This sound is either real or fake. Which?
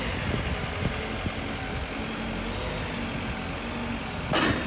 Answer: real